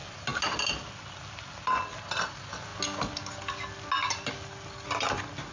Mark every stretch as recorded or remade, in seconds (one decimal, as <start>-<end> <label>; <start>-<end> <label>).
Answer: 0.0-5.5 recorded